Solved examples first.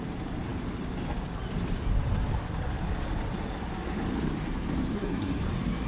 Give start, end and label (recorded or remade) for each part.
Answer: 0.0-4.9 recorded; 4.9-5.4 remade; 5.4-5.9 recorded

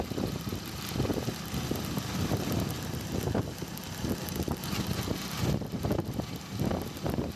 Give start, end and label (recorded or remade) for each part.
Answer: 0.0-7.4 recorded

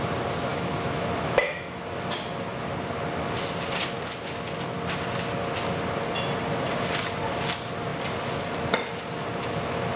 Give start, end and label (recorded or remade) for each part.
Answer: 0.0-0.5 recorded; 0.5-1.8 remade; 1.8-10.0 recorded

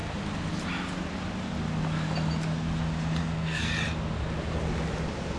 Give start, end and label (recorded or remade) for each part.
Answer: 0.0-3.2 recorded; 3.2-3.7 remade; 3.7-5.4 recorded

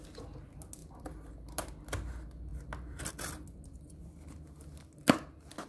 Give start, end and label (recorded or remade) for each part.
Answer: 0.0-5.7 recorded

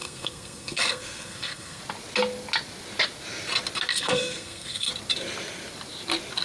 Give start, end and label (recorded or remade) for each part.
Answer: 0.0-1.8 remade; 1.8-3.9 recorded; 3.9-4.9 remade; 4.9-6.4 recorded

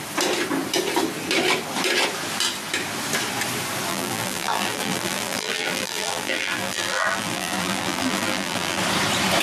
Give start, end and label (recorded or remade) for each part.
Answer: 0.0-3.9 recorded; 3.9-8.8 remade; 8.8-9.4 recorded

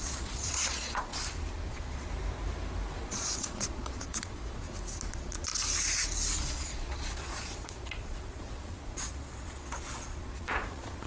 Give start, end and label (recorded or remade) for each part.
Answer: 0.0-1.1 remade; 1.1-1.7 recorded; 1.7-2.1 remade; 2.1-3.0 recorded; 3.0-4.6 remade; 4.6-5.1 recorded; 5.1-5.5 remade; 5.5-6.4 recorded; 6.4-11.1 remade